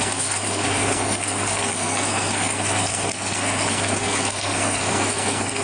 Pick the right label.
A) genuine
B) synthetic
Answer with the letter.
B